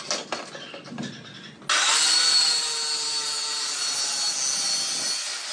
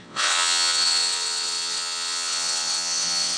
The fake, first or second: second